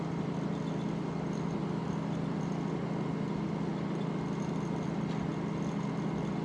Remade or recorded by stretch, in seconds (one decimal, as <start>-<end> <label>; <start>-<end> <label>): 0.0-6.4 recorded